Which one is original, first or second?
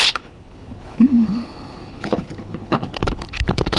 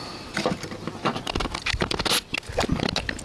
second